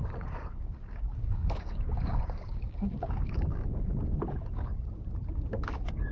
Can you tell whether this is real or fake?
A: fake